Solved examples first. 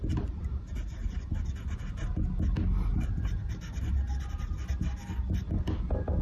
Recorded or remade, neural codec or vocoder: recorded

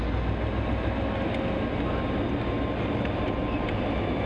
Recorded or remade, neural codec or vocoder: recorded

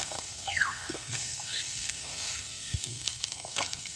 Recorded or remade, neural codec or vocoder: remade, codec, SNAC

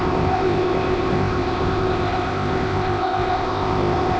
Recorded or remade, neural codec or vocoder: remade, codec, ZipCodec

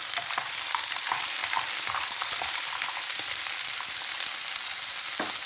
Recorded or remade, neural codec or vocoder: recorded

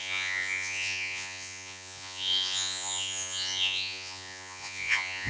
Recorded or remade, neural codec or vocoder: remade, vocoder, Vocos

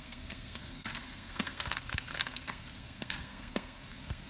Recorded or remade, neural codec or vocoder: remade, codec, SNAC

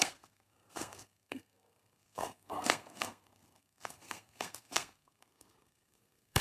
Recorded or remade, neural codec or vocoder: remade, codec, SNAC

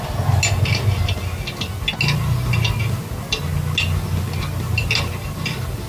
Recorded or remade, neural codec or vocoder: recorded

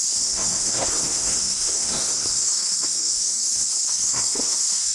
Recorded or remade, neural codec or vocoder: remade, codec, SNAC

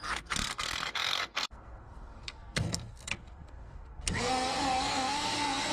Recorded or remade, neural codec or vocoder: remade, codec, SNAC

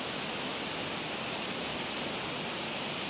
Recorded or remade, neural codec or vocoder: recorded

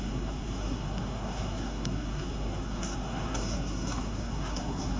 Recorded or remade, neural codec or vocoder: remade, codec, SNAC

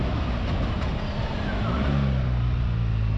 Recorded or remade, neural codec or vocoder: recorded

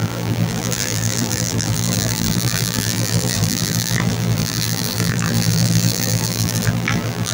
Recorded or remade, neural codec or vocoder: remade, vocoder, BigVGAN v2